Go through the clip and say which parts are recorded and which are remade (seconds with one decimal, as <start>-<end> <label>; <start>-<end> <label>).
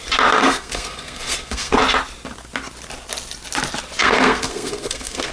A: 0.0-0.4 recorded; 0.4-1.8 remade; 1.8-4.0 recorded; 4.0-5.3 remade